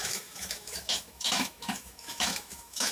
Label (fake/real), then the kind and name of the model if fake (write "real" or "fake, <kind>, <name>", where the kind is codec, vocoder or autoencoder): fake, autoencoder, DAC-VAE